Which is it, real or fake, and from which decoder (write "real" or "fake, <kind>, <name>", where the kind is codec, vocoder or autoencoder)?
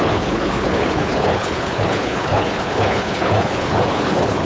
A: fake, codec, HILCodec